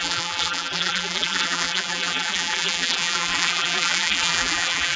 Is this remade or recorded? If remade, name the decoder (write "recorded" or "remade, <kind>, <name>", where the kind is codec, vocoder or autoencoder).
remade, vocoder, BigVGAN v2